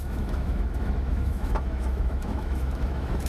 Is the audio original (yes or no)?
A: no